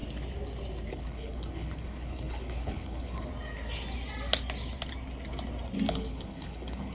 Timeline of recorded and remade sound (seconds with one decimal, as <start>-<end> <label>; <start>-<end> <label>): 0.0-0.9 recorded; 0.9-3.3 remade; 3.3-5.9 recorded; 5.9-6.9 remade